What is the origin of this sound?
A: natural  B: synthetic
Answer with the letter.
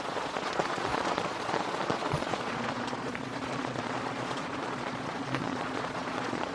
B